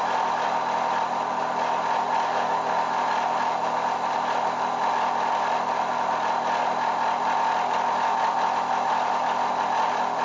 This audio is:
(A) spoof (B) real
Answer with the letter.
B